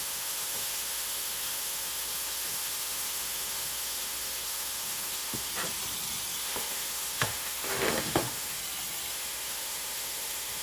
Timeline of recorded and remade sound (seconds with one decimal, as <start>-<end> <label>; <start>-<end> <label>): 0.0-5.5 remade; 5.5-6.4 recorded; 6.4-8.6 remade; 8.6-9.1 recorded; 9.1-10.6 remade